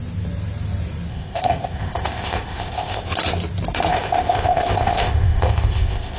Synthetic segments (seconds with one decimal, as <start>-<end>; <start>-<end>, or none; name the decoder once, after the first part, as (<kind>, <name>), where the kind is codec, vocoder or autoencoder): 1.1-3.1 (codec, ZipCodec); 3.9-6.2